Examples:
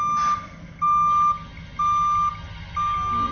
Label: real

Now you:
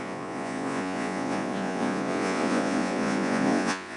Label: fake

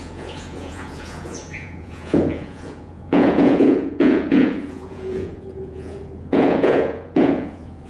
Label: fake